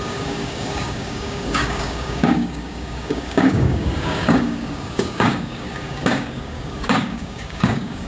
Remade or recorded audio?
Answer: remade